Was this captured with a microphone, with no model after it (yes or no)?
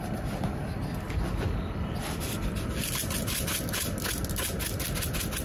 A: yes